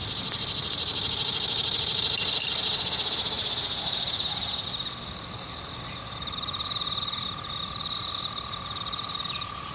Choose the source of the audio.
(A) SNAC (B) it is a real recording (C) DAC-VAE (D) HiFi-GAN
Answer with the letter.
B